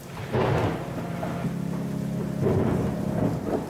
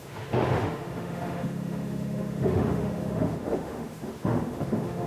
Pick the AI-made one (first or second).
second